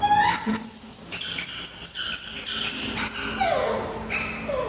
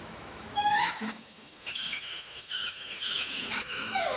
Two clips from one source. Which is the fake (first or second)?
second